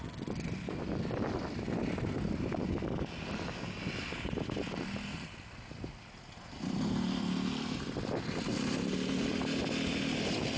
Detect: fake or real real